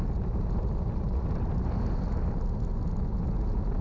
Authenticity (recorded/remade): recorded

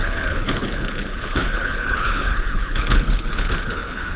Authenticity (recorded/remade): remade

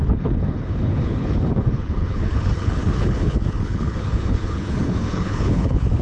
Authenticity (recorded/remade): remade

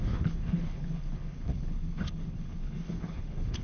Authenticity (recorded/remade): remade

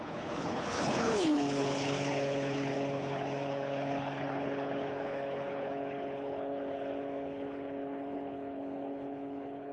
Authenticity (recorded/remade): remade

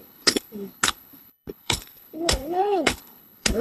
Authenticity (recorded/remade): remade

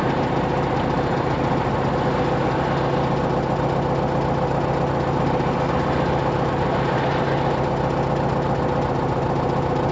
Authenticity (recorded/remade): recorded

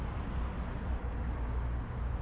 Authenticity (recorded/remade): recorded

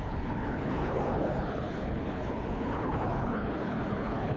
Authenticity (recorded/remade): remade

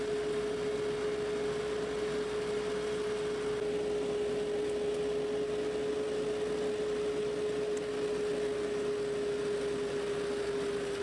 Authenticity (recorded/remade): recorded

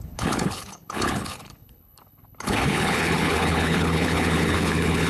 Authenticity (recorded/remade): remade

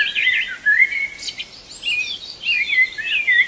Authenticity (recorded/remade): recorded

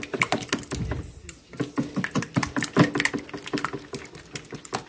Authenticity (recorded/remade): recorded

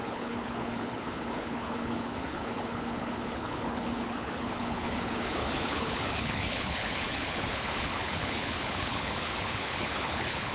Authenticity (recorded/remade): remade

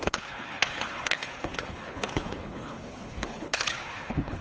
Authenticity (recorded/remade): remade